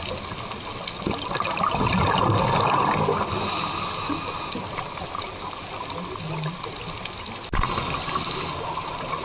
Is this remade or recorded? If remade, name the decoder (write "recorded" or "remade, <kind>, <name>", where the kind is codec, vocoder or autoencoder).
recorded